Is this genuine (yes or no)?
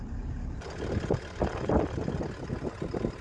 yes